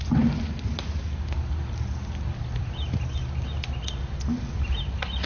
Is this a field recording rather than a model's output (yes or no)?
yes